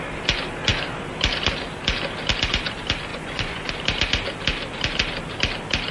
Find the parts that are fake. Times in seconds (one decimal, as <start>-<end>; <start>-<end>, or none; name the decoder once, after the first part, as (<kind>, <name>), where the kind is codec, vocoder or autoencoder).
3.1-3.7 (vocoder, Vocos)